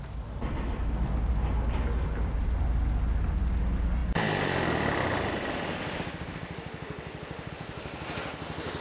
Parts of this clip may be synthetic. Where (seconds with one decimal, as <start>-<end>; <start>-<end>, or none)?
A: none